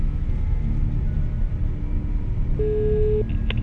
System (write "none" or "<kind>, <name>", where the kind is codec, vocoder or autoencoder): none